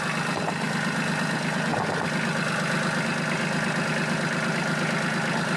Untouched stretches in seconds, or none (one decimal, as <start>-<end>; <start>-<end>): 0.0-5.6